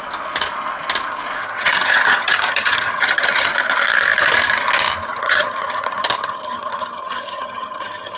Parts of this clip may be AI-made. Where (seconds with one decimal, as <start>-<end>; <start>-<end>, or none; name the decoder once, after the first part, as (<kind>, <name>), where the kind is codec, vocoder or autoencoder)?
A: 1.4-3.5 (vocoder, HiFi-GAN); 5.1-8.2